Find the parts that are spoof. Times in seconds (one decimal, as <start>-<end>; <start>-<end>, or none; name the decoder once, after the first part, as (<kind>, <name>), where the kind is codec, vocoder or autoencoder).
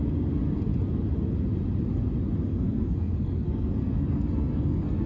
2.5-5.1 (codec, SNAC)